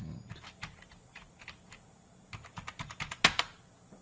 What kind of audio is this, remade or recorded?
recorded